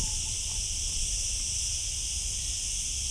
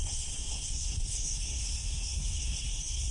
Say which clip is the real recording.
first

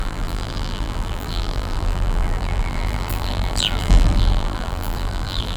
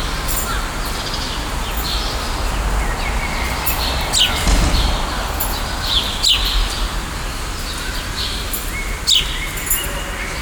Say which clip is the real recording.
second